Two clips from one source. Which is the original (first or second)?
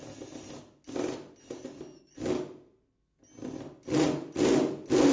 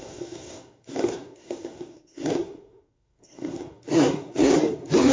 first